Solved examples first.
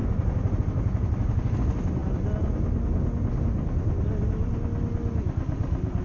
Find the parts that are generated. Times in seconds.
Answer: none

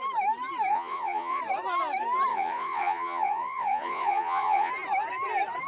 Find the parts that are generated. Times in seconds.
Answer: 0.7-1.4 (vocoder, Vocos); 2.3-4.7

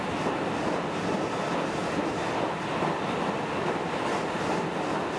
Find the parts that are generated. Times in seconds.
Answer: none

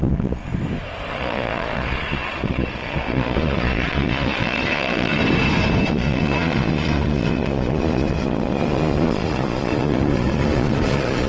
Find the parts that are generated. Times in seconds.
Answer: 0.0-0.5 (vocoder, Vocos); 1.1-5.2; 5.9-11.3